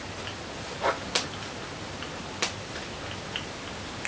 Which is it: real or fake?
real